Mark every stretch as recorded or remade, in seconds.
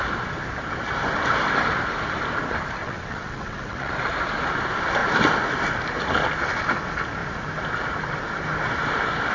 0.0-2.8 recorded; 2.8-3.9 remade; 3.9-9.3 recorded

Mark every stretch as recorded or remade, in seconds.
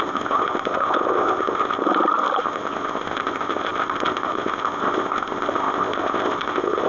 0.0-1.8 remade; 1.8-2.4 recorded; 2.4-6.9 remade